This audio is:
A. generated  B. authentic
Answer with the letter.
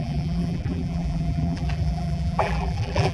A